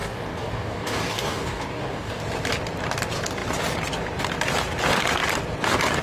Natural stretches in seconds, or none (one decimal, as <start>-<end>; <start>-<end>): 2.2-6.0

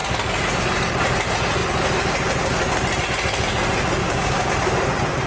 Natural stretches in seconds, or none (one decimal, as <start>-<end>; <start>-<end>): 0.0-4.0; 4.5-5.3

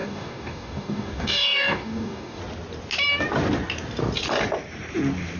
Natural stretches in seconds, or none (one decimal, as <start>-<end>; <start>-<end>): 2.4-5.4

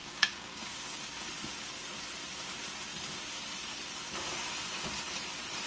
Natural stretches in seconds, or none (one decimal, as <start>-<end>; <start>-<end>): 1.3-5.7

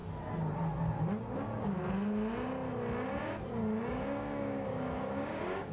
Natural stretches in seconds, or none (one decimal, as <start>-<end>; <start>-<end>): 0.0-3.9